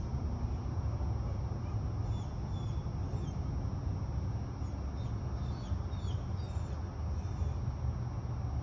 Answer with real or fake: real